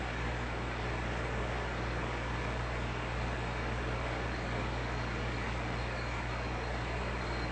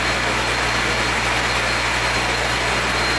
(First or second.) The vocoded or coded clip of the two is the first